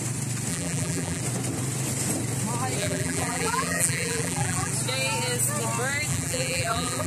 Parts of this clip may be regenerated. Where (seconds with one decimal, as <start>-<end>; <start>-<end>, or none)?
0.5-1.2; 2.8-4.7; 6.1-7.1